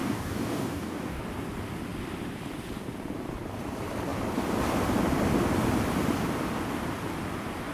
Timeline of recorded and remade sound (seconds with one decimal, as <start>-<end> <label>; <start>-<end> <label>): 0.0-1.2 remade; 1.2-7.7 recorded